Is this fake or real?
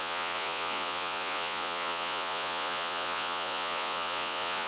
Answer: fake